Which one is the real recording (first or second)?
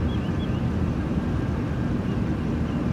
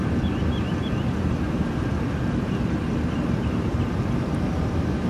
first